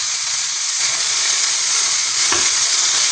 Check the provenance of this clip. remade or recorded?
remade